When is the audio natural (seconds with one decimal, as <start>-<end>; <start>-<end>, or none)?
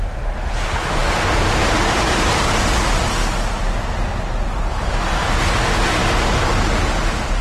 0.0-7.4